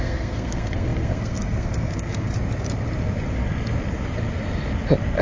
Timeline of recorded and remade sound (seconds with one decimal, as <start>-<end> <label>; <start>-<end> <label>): 0.0-2.3 remade; 2.3-5.2 recorded